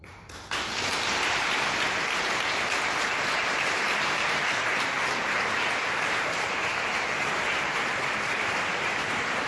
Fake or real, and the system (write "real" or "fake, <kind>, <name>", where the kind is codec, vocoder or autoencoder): fake, vocoder, BigVGAN v2